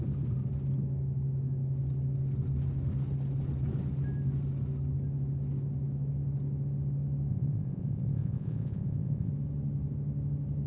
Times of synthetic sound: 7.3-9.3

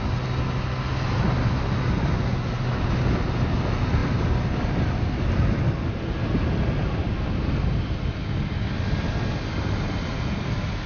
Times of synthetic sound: none

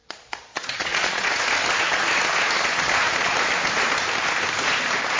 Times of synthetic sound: 0.0-1.4; 2.7-3.3

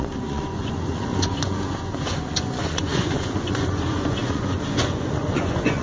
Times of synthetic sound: 0.0-5.8

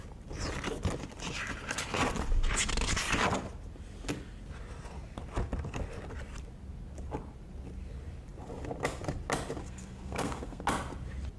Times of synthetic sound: 9.6-10.6